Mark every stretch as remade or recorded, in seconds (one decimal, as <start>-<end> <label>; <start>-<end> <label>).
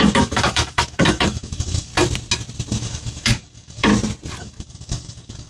0.0-1.9 remade; 1.9-2.8 recorded; 2.8-3.9 remade; 3.9-4.4 recorded; 4.4-5.5 remade